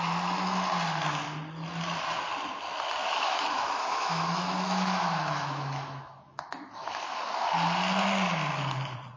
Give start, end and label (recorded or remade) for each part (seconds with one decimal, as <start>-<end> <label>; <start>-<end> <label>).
0.0-3.0 recorded; 3.0-7.2 remade; 7.2-9.2 recorded